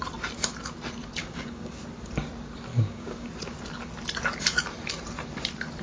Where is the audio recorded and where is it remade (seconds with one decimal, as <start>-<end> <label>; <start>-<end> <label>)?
0.0-1.2 recorded; 1.2-1.8 remade; 1.8-2.7 recorded; 2.7-3.3 remade; 3.3-5.8 recorded